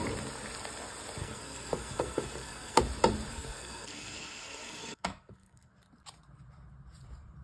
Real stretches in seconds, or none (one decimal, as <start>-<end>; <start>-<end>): 0.0-1.2; 2.8-3.3; 5.7-7.4